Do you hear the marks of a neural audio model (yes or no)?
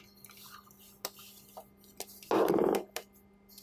no